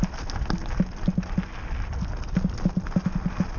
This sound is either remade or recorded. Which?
recorded